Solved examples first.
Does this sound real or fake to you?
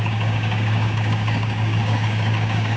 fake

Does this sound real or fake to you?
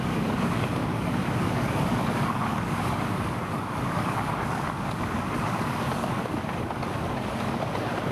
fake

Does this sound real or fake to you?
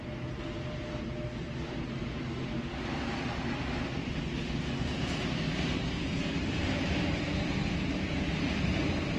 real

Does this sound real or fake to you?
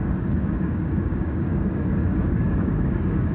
fake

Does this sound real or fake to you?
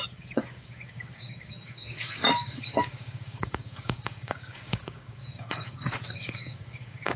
fake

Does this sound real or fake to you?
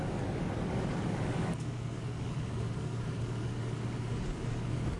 fake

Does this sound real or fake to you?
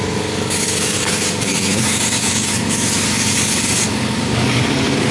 fake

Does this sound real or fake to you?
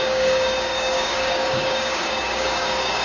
fake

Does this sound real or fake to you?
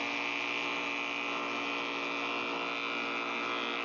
real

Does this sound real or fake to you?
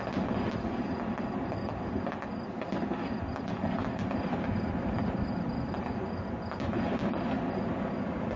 real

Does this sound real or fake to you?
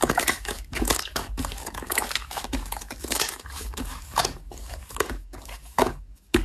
fake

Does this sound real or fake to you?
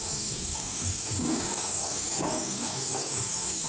fake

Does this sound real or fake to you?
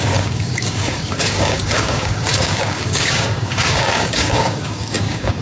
fake